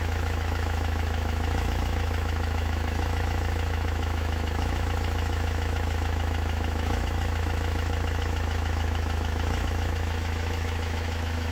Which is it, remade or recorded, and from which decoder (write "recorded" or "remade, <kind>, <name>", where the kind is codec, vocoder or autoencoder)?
remade, autoencoder, DAC-VAE